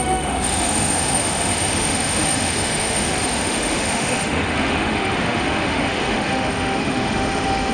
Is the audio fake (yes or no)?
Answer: yes